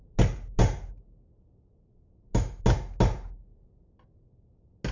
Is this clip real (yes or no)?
yes